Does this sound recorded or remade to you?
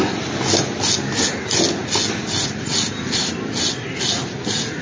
recorded